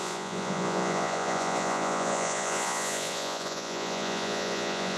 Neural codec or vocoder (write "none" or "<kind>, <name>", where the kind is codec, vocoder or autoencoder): vocoder, Vocos